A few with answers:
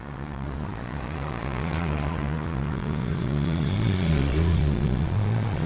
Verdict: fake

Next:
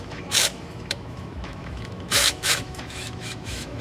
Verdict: fake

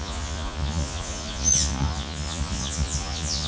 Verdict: fake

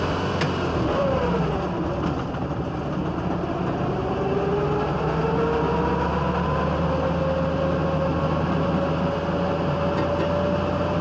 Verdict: real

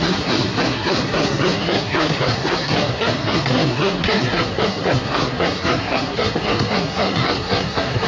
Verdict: fake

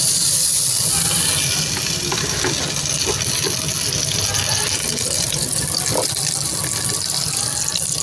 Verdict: real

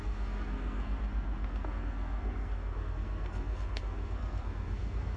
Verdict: fake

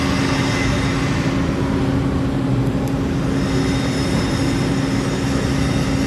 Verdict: real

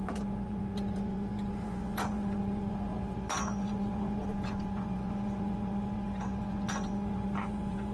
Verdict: fake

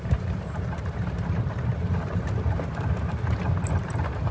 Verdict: fake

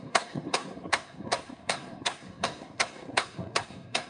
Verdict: fake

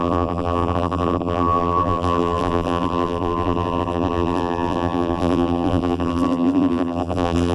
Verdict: fake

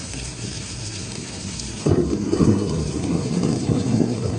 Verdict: fake